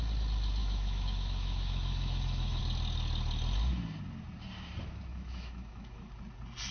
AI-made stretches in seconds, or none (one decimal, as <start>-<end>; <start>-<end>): 0.6-2.6; 5.1-6.1